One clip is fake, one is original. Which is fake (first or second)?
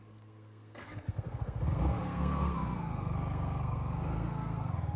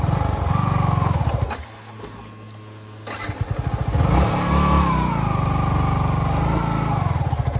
first